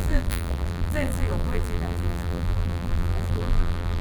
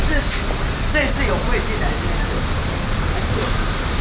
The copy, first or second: first